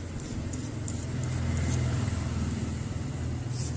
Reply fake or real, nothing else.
real